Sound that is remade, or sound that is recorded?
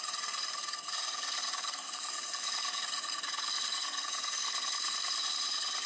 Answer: remade